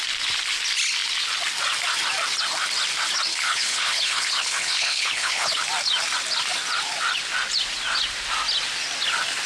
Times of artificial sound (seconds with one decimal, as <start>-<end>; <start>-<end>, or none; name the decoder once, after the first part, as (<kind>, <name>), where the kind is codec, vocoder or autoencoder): 3.3-5.6 (codec, HILCodec)